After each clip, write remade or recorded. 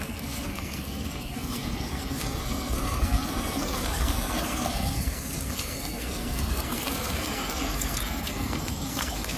remade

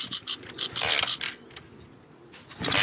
recorded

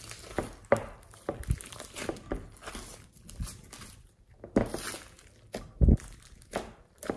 recorded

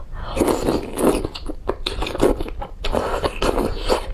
recorded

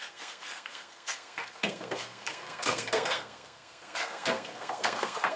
remade